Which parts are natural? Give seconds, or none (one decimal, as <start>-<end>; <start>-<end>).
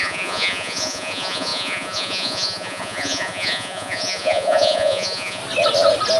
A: 5.4-6.2